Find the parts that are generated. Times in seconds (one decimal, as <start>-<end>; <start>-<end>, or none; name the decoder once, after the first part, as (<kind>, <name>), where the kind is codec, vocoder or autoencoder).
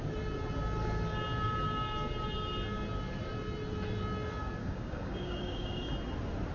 4.6-5.9 (codec, DAC)